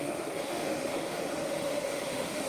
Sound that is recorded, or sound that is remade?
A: remade